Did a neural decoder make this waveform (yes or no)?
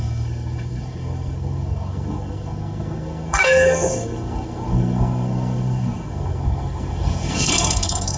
yes